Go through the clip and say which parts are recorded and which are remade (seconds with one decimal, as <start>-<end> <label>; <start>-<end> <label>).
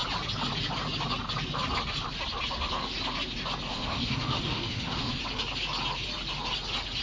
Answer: 0.0-3.7 recorded; 3.7-5.2 remade; 5.2-7.0 recorded